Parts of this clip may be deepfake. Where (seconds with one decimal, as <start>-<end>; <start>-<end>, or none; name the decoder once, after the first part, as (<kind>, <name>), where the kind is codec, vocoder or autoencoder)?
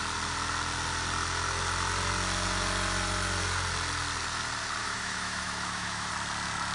4.8-6.1 (autoencoder, DAC-VAE)